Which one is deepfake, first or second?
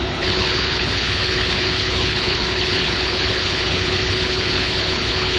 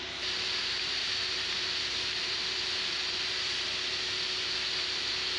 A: first